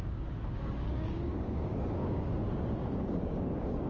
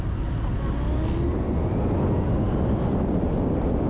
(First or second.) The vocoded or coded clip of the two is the first